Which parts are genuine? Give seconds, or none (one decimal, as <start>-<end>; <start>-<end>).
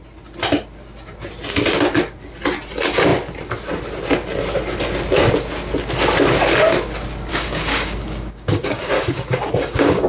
0.0-7.3